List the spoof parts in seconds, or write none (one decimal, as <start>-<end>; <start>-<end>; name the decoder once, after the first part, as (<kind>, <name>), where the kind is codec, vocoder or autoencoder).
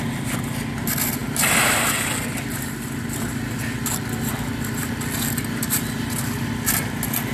none